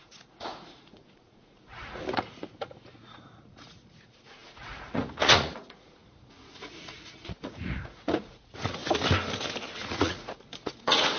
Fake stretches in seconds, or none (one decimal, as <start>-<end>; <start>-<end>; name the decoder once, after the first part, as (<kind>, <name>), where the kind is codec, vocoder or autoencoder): 0.0-8.8 (vocoder, Vocos); 9.8-11.2